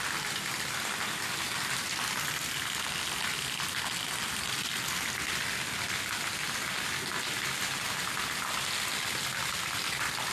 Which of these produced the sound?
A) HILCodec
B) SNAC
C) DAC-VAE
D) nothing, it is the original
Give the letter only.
D